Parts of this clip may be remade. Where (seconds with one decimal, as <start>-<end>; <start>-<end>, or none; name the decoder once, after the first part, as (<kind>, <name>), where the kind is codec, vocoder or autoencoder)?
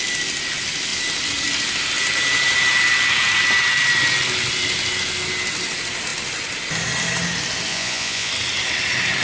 7.7-8.3 (vocoder, Vocos)